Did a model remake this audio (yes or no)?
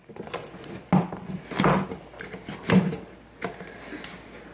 no